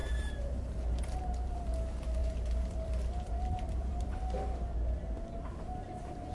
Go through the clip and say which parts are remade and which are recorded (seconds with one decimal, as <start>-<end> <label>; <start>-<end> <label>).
0.0-2.2 recorded; 2.2-4.0 remade; 4.0-6.3 recorded